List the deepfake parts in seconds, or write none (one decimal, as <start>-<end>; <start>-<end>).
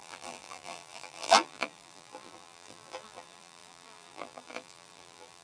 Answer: 0.0-5.4